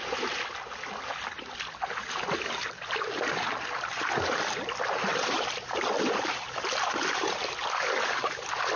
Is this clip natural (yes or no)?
yes